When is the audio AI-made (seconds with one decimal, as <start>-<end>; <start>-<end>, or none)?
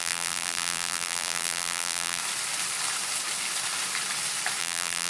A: 0.0-2.2; 4.6-5.1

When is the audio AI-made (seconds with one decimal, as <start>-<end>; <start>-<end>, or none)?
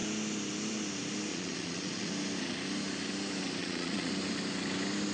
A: 1.3-2.1; 3.6-4.1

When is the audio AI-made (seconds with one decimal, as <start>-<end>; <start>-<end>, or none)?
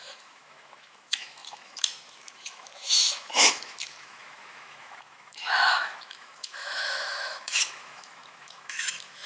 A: 0.0-9.3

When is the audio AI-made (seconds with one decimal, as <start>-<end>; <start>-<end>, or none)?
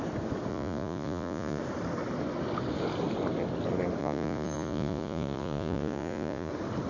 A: 0.5-1.6; 4.0-6.5